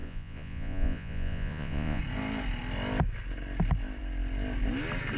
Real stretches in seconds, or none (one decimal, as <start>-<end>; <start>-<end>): 2.0-5.2